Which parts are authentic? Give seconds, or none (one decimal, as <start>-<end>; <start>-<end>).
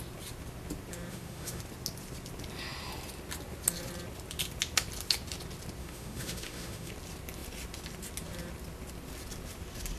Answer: 0.0-1.1; 1.6-5.8; 6.9-10.0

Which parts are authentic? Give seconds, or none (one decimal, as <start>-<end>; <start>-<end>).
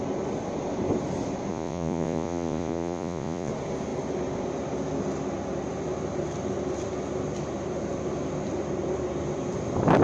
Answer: 0.0-1.5; 3.5-10.0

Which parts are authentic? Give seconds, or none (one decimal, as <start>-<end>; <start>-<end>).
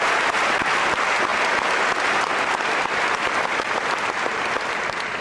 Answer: 0.0-5.2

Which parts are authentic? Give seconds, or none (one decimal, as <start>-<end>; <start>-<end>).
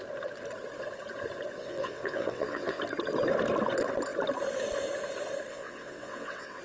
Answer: 0.0-1.6; 2.8-5.5